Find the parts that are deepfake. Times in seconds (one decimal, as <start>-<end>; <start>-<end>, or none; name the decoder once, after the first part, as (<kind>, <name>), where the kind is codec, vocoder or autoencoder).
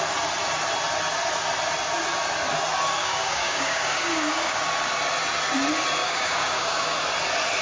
3.0-4.6 (codec, DAC); 6.0-7.0